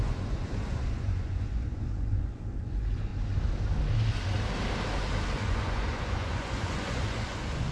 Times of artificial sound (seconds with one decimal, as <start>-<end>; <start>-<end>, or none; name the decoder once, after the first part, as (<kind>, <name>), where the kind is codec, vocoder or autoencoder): 0.0-3.1 (vocoder, Vocos); 5.3-7.7